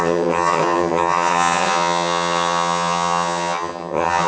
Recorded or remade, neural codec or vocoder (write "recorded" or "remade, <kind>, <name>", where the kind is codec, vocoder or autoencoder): remade, vocoder, HiFi-GAN